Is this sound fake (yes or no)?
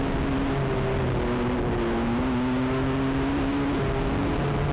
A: no